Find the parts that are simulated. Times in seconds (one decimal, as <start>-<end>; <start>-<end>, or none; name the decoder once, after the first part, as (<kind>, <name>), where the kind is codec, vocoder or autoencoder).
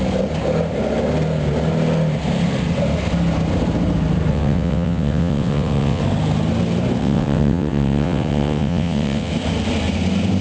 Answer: 4.3-6.0 (vocoder, WaveNeXt); 7.0-9.3